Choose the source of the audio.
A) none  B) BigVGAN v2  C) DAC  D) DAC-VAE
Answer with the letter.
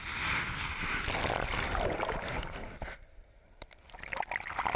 A